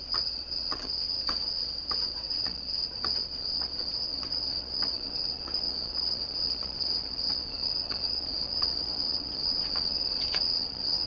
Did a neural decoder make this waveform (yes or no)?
yes